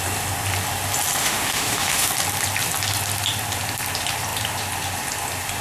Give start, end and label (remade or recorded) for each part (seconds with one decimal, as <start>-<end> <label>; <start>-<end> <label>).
0.0-1.2 recorded; 1.2-2.1 remade; 2.1-5.6 recorded